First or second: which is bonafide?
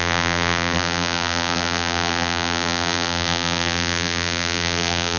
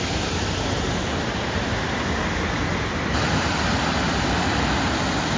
second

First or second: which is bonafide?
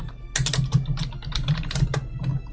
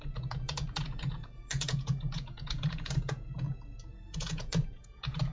first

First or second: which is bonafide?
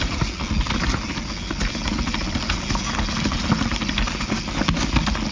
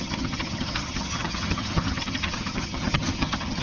first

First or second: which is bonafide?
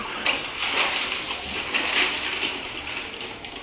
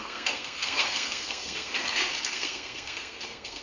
first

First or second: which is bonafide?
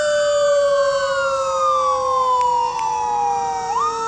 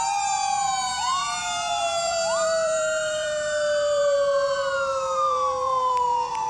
first